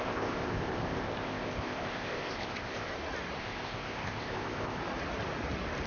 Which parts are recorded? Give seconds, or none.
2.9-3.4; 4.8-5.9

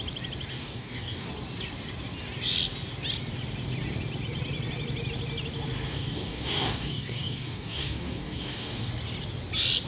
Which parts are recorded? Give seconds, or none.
0.0-0.5; 1.3-5.9; 8.9-9.9